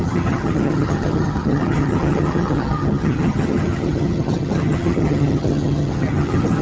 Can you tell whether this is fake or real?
fake